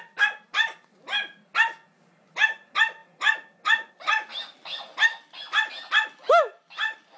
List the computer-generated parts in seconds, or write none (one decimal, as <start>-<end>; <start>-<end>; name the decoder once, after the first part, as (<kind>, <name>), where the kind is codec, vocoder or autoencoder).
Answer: none